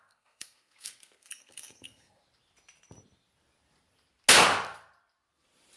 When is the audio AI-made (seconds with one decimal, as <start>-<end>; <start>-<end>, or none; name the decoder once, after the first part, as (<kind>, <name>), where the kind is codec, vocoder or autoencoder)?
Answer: 0.0-2.2 (codec, SNAC)